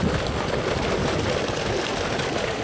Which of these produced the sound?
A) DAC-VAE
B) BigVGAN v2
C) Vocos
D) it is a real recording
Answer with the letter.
D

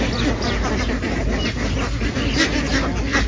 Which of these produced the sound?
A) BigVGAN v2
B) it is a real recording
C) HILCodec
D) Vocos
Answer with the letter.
B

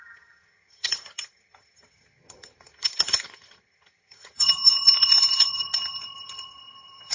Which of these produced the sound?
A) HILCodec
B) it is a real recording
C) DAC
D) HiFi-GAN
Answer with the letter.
D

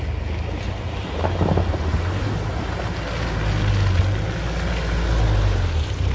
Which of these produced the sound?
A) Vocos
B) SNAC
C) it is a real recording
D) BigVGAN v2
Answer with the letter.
C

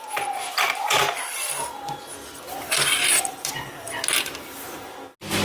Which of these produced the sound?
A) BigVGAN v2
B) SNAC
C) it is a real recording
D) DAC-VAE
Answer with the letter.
C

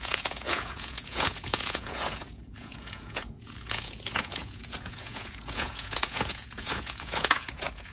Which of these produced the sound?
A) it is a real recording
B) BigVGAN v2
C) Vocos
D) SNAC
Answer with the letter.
C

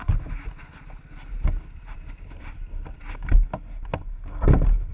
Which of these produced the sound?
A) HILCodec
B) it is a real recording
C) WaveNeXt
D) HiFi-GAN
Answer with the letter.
B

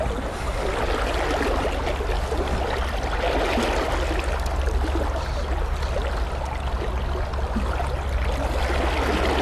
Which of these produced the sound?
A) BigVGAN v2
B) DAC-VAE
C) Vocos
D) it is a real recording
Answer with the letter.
D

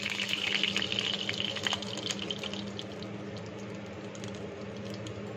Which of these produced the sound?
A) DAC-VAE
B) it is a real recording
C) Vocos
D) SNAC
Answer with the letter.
B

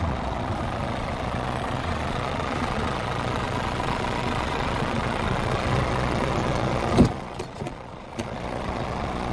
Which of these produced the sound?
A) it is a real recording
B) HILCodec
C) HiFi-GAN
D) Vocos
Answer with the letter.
D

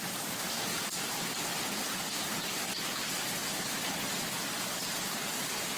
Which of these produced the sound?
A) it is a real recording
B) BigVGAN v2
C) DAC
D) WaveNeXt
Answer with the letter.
A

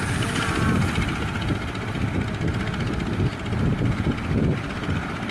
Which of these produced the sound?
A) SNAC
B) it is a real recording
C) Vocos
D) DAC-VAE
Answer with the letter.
B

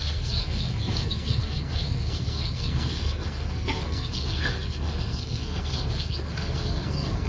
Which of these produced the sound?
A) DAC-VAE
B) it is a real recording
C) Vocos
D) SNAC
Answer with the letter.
D